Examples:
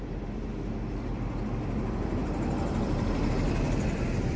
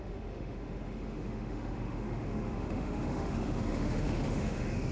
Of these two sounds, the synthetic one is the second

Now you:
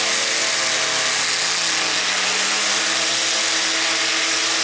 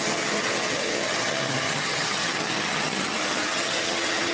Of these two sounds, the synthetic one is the second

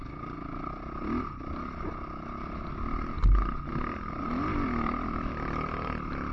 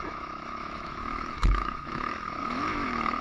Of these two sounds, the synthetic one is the second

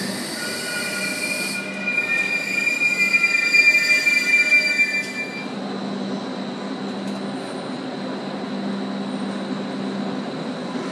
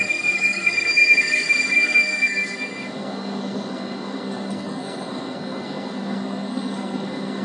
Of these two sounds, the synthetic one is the second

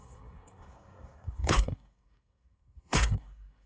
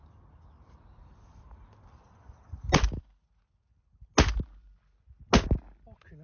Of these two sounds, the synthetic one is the first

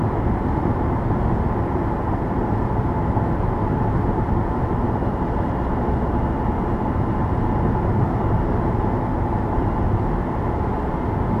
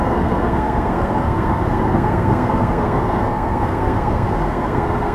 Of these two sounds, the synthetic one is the second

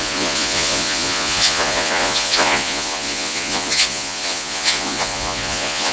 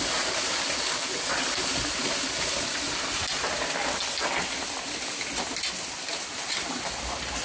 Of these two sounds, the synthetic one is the first